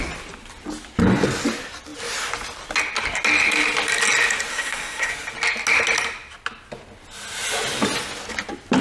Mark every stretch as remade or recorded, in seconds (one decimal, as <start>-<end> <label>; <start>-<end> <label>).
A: 0.0-4.5 recorded; 4.5-5.1 remade; 5.1-8.8 recorded